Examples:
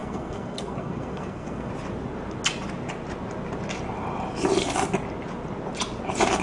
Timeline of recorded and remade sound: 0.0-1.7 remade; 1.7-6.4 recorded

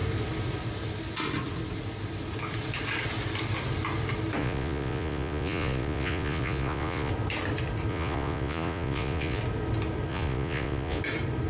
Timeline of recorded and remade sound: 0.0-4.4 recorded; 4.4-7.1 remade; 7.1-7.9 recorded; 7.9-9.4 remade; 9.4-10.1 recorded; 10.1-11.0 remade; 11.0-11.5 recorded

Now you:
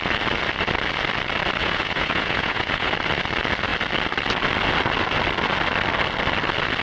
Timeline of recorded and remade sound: 0.0-1.6 recorded; 1.6-2.9 remade; 2.9-6.8 recorded

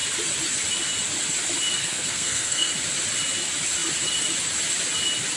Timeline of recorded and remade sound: 0.0-1.8 recorded; 1.8-2.7 remade; 2.7-5.4 recorded

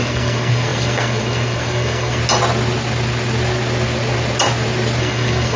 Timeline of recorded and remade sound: 0.0-2.2 remade; 2.2-5.0 recorded; 5.0-5.6 remade

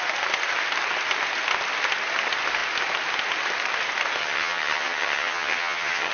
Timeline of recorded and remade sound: 0.0-4.2 recorded; 4.2-6.1 remade